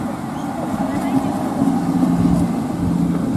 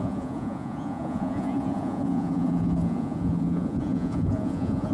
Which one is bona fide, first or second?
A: first